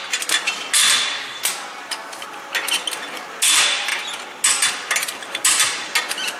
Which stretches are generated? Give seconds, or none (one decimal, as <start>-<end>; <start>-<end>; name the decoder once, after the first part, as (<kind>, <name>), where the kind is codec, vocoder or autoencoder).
none